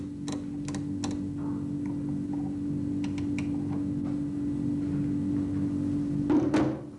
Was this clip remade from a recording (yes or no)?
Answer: no